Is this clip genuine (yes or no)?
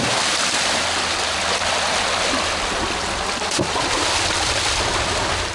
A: yes